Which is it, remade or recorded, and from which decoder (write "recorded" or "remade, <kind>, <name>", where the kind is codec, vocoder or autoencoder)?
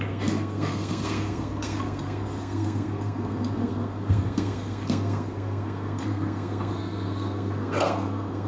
remade, codec, SNAC